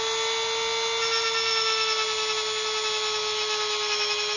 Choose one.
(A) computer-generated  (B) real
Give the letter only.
B